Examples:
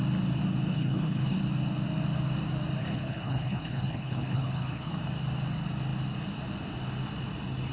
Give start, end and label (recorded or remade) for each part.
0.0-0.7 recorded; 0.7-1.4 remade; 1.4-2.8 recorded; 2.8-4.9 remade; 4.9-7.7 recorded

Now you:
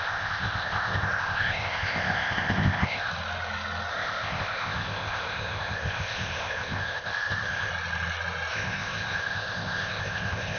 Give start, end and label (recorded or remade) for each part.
0.0-3.1 remade; 3.1-3.9 recorded; 3.9-7.7 remade; 7.7-8.5 recorded; 8.5-10.6 remade

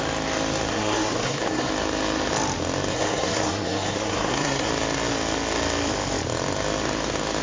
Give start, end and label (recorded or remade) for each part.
0.0-0.7 recorded; 0.7-1.7 remade; 1.7-2.9 recorded; 2.9-4.7 remade; 4.7-7.4 recorded

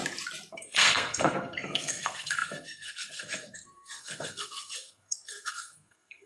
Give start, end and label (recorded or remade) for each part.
0.0-0.5 recorded; 0.5-6.3 remade

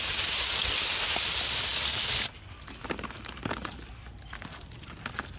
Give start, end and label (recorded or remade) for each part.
0.0-5.4 recorded

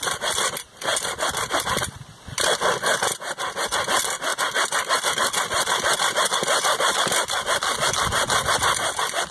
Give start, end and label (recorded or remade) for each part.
0.0-0.9 recorded; 0.9-2.1 remade; 2.1-9.3 recorded

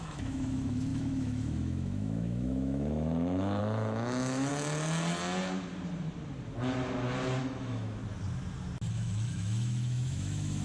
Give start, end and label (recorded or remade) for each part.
0.0-4.5 remade; 4.5-7.4 recorded; 7.4-8.0 remade; 8.0-8.9 recorded; 8.9-10.6 remade